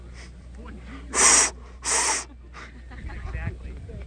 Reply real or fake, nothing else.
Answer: real